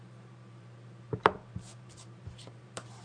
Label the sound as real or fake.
fake